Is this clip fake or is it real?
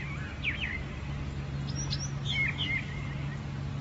real